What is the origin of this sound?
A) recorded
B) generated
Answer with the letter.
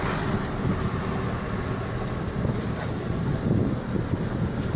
A